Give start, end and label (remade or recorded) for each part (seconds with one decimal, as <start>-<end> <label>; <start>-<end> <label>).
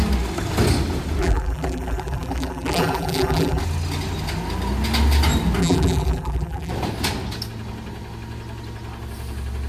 0.0-1.2 recorded; 1.2-3.6 remade; 3.6-5.6 recorded; 5.6-6.7 remade; 6.7-9.7 recorded